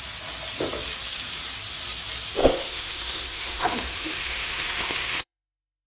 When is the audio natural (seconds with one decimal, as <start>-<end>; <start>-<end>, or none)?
0.0-2.4